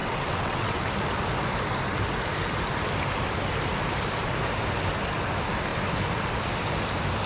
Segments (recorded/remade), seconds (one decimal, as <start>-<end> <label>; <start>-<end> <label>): 0.0-0.8 remade; 0.8-7.3 recorded